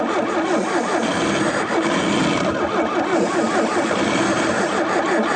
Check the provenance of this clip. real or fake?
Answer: real